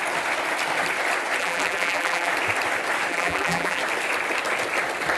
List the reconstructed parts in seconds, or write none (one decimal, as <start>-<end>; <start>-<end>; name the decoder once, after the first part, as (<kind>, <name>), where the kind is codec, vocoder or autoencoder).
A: 1.4-2.3 (vocoder, BigVGAN v2); 3.1-3.8